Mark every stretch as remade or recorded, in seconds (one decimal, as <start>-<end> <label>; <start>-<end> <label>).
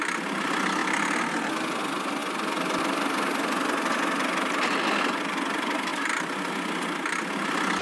0.0-7.8 recorded